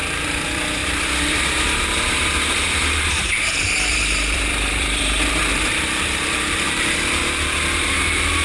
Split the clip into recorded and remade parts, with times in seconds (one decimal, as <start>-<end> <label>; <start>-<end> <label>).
0.0-7.2 remade; 7.2-7.9 recorded; 7.9-8.4 remade